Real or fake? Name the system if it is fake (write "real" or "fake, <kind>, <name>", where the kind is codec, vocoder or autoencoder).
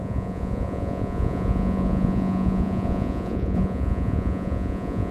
fake, vocoder, Vocos